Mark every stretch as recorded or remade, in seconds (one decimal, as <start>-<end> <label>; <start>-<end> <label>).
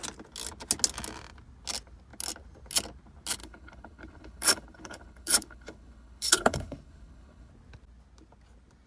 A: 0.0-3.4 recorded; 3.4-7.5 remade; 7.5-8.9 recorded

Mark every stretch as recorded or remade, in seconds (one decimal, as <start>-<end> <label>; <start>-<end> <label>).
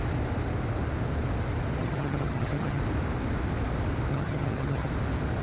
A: 0.0-1.8 recorded; 1.8-2.8 remade; 2.8-4.1 recorded; 4.1-4.9 remade; 4.9-5.4 recorded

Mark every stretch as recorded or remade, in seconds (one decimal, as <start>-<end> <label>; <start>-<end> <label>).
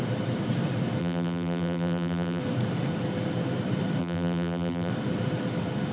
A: 0.0-1.0 recorded; 1.0-2.4 remade; 2.4-4.0 recorded; 4.0-4.9 remade; 4.9-5.9 recorded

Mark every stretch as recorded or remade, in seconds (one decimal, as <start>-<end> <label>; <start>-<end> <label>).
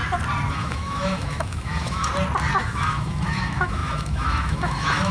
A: 0.0-0.5 recorded; 0.5-2.1 remade; 2.1-2.6 recorded; 2.6-5.1 remade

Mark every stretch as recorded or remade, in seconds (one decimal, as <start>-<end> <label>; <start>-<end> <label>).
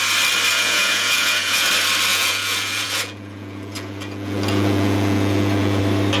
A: 0.0-0.5 recorded; 0.5-1.7 remade; 1.7-2.1 recorded; 2.1-5.8 remade; 5.8-6.2 recorded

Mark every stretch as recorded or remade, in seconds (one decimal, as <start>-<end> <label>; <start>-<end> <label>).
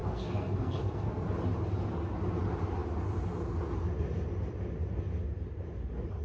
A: 0.0-1.1 remade; 1.1-6.2 recorded